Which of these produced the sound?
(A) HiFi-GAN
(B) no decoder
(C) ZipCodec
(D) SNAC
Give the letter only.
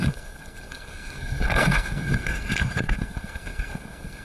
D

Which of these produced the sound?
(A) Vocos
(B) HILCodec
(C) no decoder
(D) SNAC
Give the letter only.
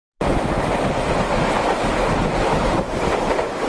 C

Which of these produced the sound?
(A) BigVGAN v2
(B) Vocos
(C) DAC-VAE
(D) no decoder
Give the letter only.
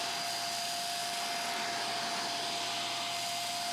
D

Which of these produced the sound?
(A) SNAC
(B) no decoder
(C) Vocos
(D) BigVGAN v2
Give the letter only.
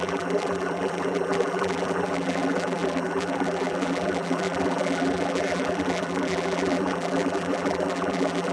D